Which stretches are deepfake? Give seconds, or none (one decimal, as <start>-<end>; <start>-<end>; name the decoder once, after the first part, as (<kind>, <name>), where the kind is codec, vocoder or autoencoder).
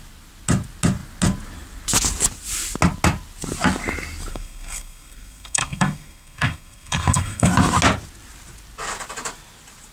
4.3-7.5 (codec, SNAC)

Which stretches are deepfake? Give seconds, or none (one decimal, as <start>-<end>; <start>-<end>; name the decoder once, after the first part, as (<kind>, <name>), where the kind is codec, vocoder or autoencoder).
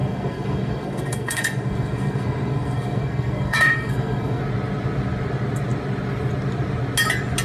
0.0-4.4 (codec, SNAC)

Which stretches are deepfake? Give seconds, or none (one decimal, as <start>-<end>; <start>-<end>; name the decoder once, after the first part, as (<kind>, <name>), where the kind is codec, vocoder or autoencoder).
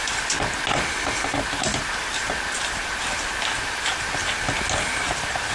none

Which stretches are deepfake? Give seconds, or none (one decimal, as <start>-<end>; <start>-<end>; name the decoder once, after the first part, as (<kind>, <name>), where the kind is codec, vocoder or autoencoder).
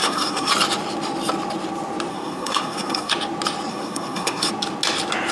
0.0-0.5 (codec, SNAC); 2.1-3.1; 3.7-4.5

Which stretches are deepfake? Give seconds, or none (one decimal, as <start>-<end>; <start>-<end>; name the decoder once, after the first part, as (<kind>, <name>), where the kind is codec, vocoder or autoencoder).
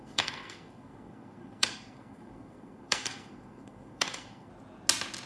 0.0-4.5 (codec, SNAC)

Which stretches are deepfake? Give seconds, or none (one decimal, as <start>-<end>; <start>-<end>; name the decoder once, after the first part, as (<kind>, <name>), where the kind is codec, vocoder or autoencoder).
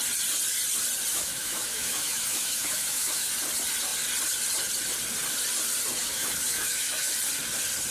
1.1-3.3 (autoencoder, DAC-VAE); 6.0-7.1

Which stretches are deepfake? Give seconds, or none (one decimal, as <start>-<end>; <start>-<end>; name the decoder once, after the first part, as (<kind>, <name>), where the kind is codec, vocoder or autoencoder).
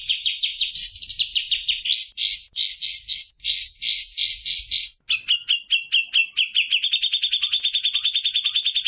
0.0-0.7 (codec, DAC)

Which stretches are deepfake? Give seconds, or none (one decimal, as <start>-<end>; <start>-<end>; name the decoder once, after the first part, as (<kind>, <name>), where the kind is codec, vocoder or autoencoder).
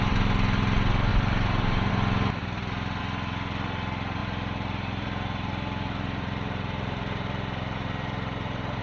1.1-1.9 (vocoder, BigVGAN v2); 2.4-3.0; 4.2-8.8